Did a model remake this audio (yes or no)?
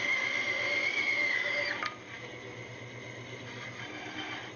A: no